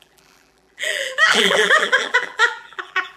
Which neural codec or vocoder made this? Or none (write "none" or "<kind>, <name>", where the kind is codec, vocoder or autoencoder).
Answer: vocoder, BigVGAN v2